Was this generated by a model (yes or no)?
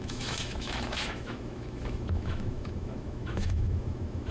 yes